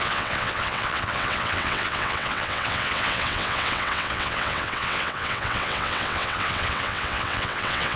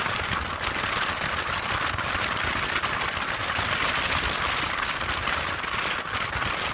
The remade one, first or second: first